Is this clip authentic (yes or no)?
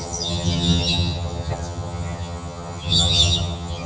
no